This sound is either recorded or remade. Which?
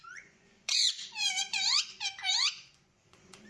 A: remade